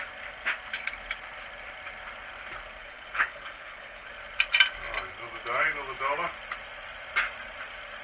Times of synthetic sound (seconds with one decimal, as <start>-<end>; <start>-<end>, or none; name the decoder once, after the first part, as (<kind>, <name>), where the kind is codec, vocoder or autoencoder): 2.8-4.1 (codec, HILCodec)